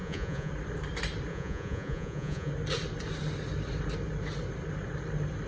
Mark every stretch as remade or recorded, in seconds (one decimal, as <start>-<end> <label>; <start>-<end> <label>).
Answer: 0.0-0.5 remade; 0.5-1.3 recorded; 1.3-2.5 remade; 2.5-5.5 recorded